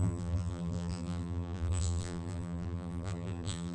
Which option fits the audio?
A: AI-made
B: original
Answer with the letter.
A